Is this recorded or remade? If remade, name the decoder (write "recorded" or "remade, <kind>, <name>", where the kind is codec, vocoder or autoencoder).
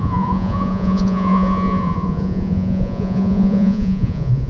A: remade, vocoder, Vocos